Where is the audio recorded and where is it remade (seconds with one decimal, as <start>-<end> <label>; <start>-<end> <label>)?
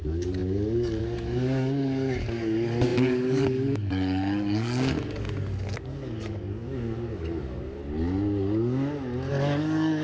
0.0-7.8 remade; 7.8-9.3 recorded; 9.3-10.0 remade